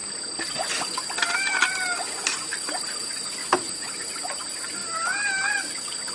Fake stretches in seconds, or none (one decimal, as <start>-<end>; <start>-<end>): 3.4-3.9